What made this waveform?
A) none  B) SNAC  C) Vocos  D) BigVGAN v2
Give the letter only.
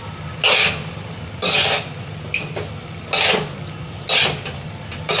A